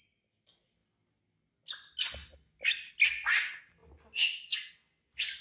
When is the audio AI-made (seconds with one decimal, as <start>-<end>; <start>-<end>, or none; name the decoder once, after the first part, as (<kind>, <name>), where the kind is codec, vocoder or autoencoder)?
none